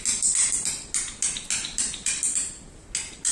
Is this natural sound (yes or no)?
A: yes